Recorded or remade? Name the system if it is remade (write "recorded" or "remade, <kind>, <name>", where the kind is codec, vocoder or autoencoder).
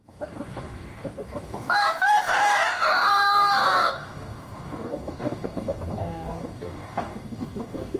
remade, codec, DAC